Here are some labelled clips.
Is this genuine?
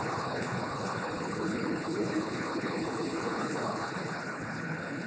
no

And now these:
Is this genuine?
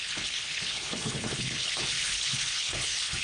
no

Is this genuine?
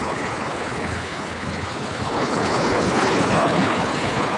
no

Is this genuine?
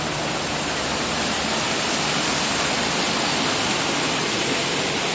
yes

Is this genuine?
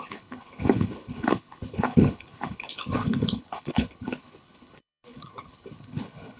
no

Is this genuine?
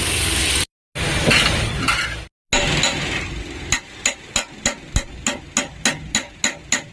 yes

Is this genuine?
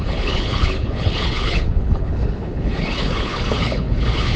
no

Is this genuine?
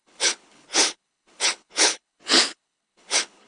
no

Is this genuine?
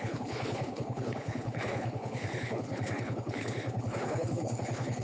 no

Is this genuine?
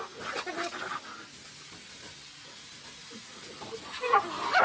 yes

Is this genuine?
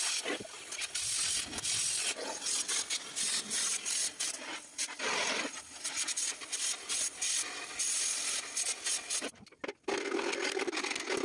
yes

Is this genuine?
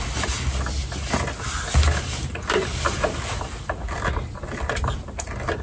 yes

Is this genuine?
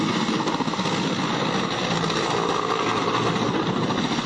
yes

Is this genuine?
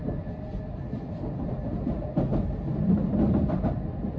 yes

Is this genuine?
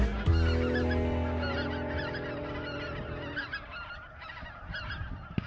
yes